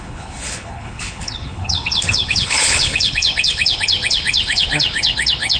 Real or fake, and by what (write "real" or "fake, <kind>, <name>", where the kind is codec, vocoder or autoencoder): fake, codec, HILCodec